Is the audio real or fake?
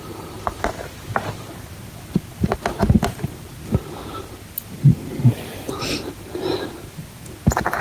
real